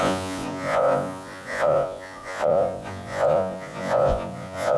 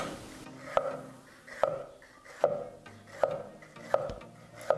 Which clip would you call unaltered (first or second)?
second